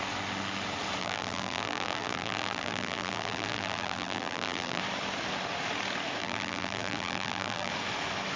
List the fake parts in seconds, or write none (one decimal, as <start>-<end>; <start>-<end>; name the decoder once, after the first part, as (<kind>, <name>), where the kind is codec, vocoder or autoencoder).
1.0-4.8 (vocoder, BigVGAN v2); 6.2-7.7